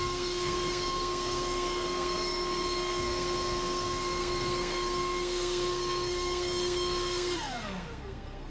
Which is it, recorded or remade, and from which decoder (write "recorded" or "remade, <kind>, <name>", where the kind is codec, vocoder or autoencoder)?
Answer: remade, codec, SNAC